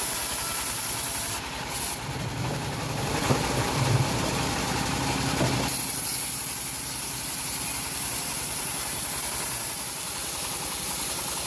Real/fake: fake